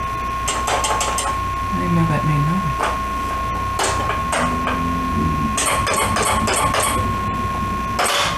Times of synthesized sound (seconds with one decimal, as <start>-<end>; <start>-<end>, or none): none